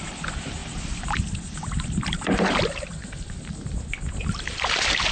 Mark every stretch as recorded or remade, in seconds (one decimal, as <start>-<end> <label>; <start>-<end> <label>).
0.0-5.1 recorded